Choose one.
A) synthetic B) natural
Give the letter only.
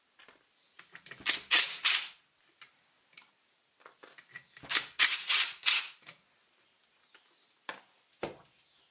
B